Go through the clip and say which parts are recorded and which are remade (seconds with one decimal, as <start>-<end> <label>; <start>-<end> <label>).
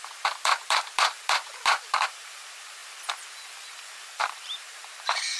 0.0-0.6 recorded; 0.6-2.8 remade; 2.8-3.8 recorded; 3.8-5.4 remade